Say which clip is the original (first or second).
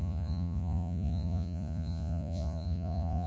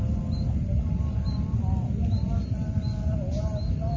second